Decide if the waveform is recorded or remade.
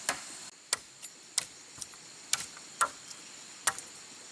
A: recorded